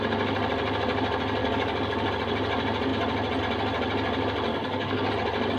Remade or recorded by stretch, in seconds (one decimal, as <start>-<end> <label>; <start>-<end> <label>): 0.0-1.4 recorded; 1.4-2.1 remade; 2.1-4.5 recorded; 4.5-5.1 remade; 5.1-5.6 recorded